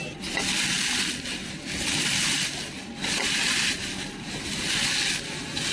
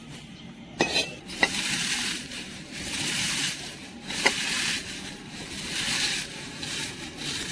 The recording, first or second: first